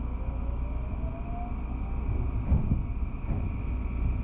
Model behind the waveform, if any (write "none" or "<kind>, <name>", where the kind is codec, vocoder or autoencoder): none